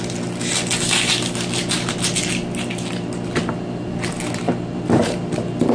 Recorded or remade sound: recorded